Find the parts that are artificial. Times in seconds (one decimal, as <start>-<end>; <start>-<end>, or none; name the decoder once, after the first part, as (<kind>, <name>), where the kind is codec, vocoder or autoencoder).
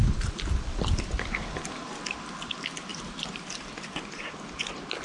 2.9-3.5 (vocoder, BigVGAN v2)